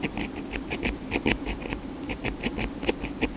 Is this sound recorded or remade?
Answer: recorded